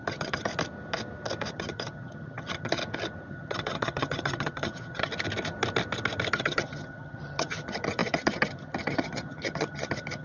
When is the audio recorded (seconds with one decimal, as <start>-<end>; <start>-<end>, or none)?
0.5-1.5; 2.8-3.3; 5.1-6.3